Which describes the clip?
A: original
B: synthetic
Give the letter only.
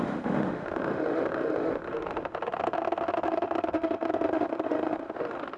B